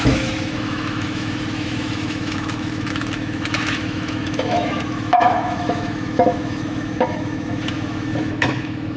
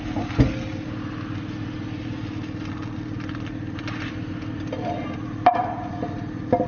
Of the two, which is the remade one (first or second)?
first